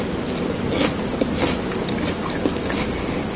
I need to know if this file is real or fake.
real